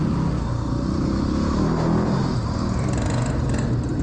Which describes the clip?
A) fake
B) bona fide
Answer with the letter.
B